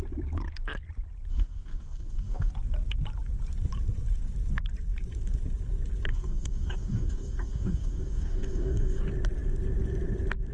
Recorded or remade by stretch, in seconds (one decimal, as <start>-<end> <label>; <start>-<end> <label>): 0.0-1.3 recorded; 1.3-2.5 remade; 2.5-6.1 recorded; 6.1-9.0 remade; 9.0-10.5 recorded